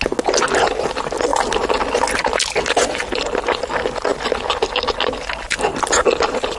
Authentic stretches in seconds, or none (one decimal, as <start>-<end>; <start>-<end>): 0.0-6.6